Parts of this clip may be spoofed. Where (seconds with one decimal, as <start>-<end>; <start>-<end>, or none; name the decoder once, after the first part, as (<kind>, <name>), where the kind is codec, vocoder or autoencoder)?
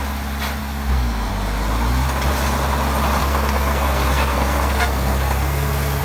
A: 0.6-1.3 (codec, SNAC); 3.2-6.0